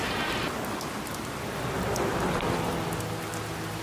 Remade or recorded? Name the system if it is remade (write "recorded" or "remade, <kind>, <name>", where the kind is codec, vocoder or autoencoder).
recorded